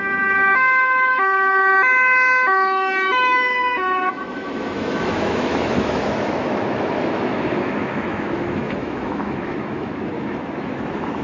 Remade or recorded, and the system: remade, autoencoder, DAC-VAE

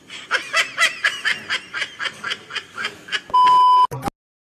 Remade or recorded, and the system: recorded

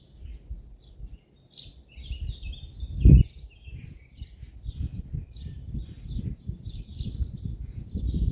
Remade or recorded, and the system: recorded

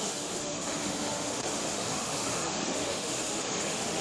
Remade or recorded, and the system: remade, autoencoder, DAC-VAE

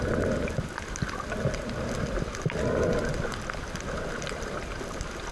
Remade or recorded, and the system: recorded